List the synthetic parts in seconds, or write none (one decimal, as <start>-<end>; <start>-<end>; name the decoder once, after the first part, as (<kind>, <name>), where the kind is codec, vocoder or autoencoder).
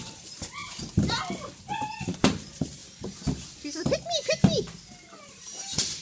0.0-0.6 (vocoder, BigVGAN v2); 1.6-2.8; 5.2-6.0